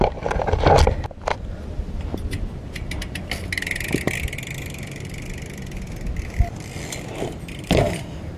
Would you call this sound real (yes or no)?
yes